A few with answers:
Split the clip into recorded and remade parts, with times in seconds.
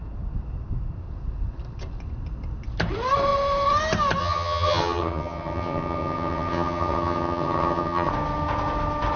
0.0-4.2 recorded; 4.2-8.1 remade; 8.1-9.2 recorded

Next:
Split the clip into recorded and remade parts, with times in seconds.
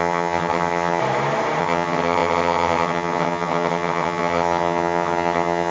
0.0-1.0 remade; 1.0-1.6 recorded; 1.6-5.7 remade